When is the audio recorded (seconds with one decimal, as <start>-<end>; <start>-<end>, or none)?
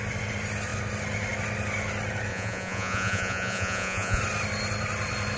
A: 0.0-2.3; 4.2-5.4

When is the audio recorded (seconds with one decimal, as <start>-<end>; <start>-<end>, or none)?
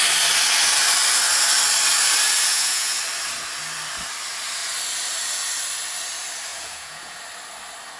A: 0.0-2.5; 3.0-6.5; 7.2-8.0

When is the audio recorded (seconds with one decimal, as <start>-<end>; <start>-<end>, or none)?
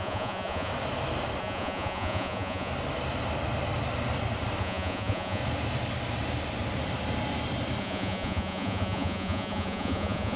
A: 0.7-1.4; 2.7-4.6; 5.4-7.8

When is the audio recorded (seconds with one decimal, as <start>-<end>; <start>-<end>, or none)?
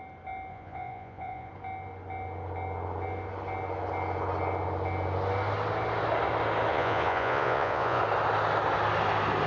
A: 0.0-0.5; 1.5-6.7; 8.0-9.5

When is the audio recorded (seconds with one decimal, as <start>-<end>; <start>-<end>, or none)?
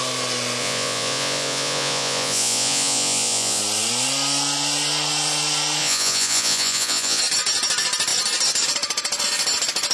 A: 0.0-0.6; 3.6-5.8; 7.2-9.9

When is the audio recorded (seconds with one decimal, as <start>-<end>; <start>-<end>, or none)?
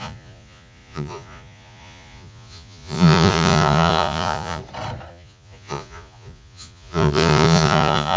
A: 4.6-5.1